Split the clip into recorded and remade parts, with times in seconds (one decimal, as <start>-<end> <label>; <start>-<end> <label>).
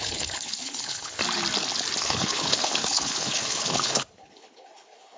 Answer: 0.0-1.2 remade; 1.2-2.0 recorded; 2.0-5.2 remade